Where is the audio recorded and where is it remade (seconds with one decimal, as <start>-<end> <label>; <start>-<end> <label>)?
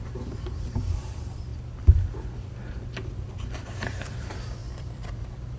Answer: 0.0-5.6 remade